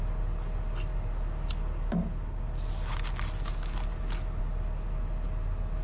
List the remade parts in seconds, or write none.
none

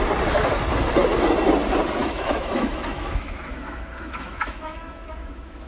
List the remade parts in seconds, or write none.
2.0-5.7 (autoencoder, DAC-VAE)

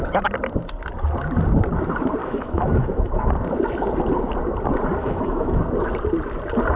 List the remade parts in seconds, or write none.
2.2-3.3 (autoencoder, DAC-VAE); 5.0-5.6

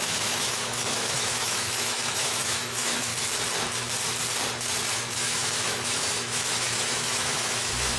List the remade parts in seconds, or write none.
0.0-3.1 (autoencoder, DAC-VAE); 4.9-8.0